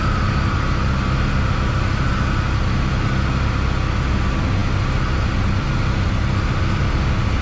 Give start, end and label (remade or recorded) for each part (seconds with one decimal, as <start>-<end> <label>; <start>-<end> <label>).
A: 0.0-7.4 recorded